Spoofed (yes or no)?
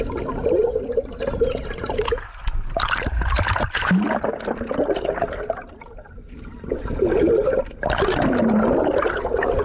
no